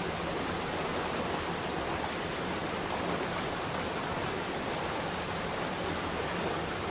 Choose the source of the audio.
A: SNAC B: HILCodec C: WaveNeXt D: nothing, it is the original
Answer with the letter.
D